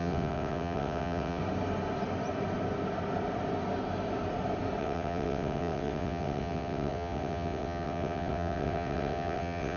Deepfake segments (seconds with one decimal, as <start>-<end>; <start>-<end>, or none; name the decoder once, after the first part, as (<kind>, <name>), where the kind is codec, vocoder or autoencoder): 0.0-1.4 (vocoder, WaveNeXt); 4.8-9.8